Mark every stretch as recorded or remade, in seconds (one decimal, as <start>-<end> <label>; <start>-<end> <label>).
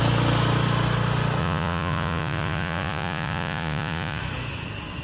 0.0-1.4 recorded; 1.4-4.2 remade; 4.2-5.0 recorded